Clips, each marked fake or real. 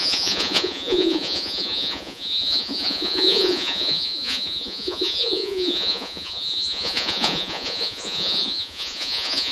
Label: fake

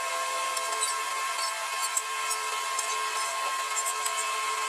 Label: real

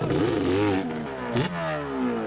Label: real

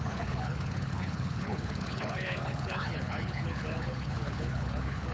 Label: fake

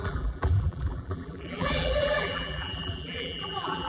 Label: fake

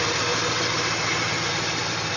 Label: real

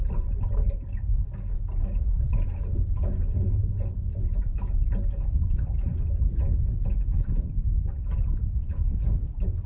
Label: real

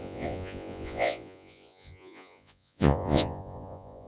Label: fake